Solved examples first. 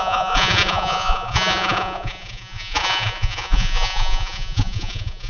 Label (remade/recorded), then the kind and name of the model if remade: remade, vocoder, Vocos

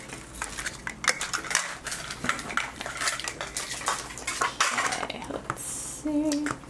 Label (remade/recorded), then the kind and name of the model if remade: recorded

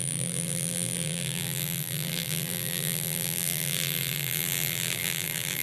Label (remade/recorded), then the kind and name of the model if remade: remade, vocoder, BigVGAN v2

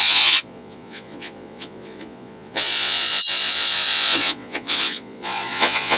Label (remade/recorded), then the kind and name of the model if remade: remade, vocoder, Vocos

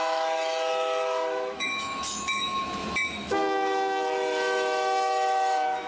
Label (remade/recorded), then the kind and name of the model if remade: remade, autoencoder, DAC-VAE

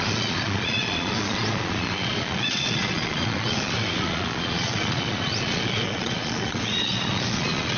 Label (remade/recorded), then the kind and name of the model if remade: remade, vocoder, Vocos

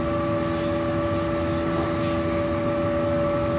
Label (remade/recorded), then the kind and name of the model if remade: recorded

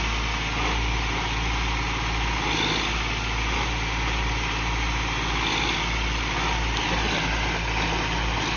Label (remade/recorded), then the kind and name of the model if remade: recorded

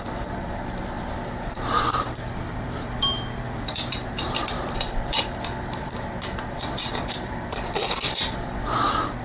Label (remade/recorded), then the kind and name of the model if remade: remade, vocoder, BigVGAN v2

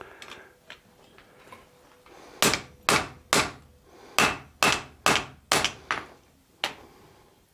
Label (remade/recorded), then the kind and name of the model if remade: recorded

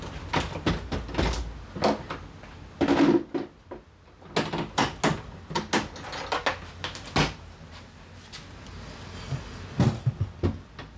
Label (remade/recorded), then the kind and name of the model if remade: recorded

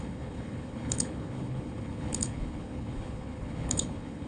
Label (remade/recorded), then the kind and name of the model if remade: remade, codec, HILCodec